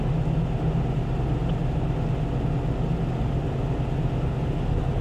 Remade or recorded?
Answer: recorded